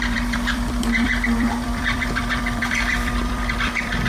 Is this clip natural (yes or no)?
no